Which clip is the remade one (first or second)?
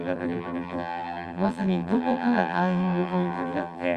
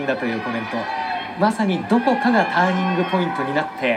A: first